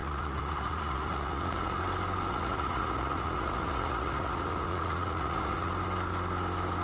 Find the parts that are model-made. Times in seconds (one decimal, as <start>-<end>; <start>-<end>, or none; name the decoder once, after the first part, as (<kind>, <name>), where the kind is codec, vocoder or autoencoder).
0.0-1.8 (vocoder, Vocos); 2.3-5.7

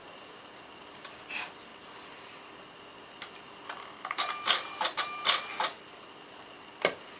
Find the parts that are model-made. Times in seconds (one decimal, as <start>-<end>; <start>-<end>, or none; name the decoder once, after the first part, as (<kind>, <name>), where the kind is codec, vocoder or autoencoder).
none

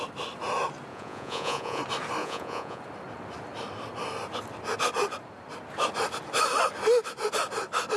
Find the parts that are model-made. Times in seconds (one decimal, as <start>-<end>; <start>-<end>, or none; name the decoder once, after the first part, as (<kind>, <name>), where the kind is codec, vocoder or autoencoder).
0.9-1.8 (vocoder, Vocos); 2.2-2.8

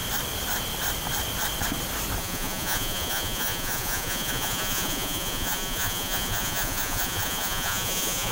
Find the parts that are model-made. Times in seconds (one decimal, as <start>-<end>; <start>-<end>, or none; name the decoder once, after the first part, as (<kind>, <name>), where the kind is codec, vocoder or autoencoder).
2.2-8.3 (vocoder, Vocos)

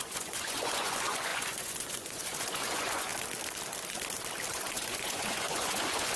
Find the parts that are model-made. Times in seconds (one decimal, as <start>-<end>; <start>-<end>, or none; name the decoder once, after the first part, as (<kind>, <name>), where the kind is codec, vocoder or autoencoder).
0.0-3.1 (vocoder, Vocos); 4.5-6.2

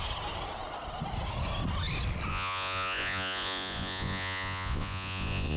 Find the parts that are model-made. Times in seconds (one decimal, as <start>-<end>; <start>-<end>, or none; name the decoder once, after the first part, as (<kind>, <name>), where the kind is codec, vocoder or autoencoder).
2.3-5.6 (vocoder, Vocos)

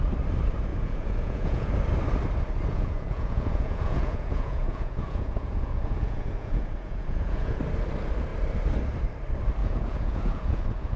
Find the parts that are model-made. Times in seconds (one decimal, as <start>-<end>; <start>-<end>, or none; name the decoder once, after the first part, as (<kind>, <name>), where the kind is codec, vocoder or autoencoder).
0.7-1.7 (vocoder, Vocos); 2.7-7.6; 9.6-11.0

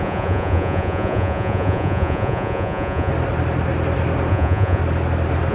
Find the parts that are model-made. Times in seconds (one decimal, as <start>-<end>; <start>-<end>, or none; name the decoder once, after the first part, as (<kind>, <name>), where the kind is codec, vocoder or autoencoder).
0.0-3.1 (vocoder, Vocos); 4.3-4.8